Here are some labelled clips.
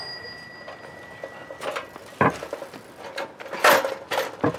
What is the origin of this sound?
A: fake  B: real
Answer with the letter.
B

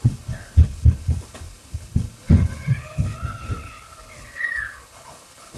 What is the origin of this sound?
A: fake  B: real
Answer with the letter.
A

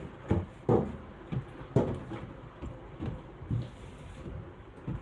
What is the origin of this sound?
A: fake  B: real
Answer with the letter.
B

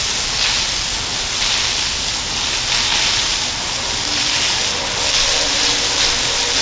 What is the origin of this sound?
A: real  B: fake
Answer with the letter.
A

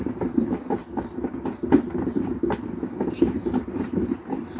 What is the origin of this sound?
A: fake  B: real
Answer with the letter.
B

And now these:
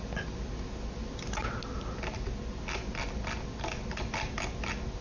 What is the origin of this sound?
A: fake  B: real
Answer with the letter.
B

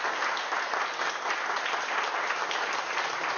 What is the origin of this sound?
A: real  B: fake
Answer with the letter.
A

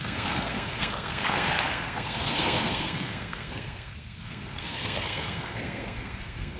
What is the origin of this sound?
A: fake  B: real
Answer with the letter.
A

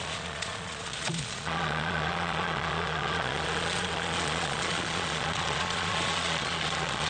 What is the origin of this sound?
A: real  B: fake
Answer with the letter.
B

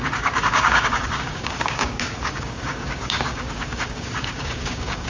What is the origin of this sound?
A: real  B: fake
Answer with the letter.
B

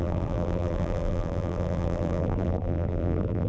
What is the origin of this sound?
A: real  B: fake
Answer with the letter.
B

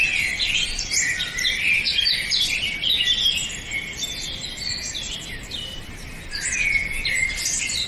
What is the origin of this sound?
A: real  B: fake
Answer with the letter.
A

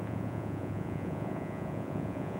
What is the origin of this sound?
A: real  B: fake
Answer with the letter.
B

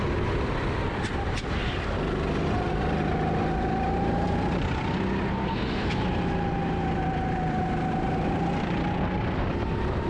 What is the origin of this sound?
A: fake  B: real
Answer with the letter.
A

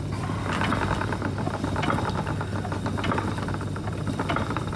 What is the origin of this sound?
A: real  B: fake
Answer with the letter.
A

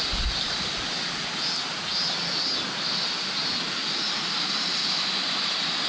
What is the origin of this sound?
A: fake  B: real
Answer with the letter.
B